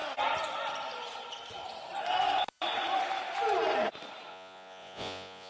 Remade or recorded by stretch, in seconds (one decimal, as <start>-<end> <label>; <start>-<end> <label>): 0.0-4.3 recorded; 4.3-5.5 remade